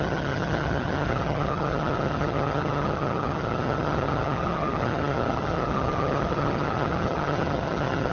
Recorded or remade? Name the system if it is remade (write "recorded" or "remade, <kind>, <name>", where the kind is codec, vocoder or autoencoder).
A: remade, vocoder, HiFi-GAN